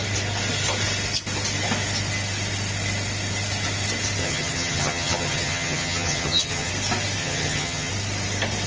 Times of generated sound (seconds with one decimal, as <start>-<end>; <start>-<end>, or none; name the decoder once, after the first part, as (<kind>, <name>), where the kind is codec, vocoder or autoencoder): 4.2-6.7 (vocoder, HiFi-GAN); 7.2-7.9